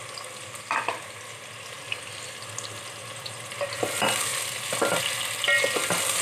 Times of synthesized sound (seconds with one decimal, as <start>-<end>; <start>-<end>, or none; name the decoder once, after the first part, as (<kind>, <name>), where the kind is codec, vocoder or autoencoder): none